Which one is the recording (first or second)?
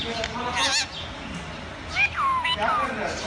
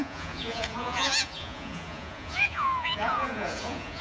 first